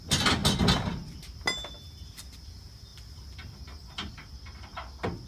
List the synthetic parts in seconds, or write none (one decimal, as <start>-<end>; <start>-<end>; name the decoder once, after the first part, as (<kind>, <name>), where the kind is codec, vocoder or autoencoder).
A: none